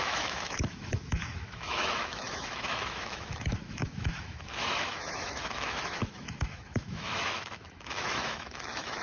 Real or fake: fake